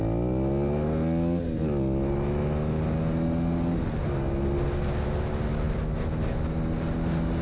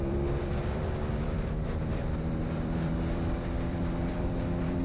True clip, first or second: first